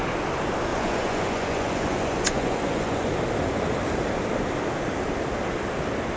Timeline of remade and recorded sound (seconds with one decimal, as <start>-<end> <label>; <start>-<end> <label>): 0.0-0.7 recorded; 0.7-3.1 remade; 3.1-6.2 recorded